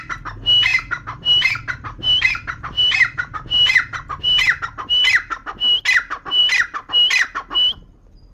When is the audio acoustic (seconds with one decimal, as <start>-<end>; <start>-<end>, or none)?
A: 0.0-0.7; 4.6-8.3